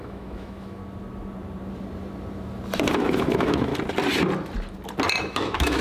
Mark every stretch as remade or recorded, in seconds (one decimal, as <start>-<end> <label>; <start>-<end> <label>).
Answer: 0.0-0.8 remade; 0.8-2.9 recorded; 2.9-3.7 remade; 3.7-5.2 recorded; 5.2-5.8 remade